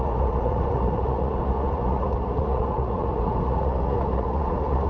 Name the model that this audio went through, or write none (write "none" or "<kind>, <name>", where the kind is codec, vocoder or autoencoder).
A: vocoder, Vocos